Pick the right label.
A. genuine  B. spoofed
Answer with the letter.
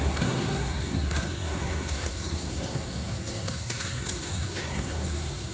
B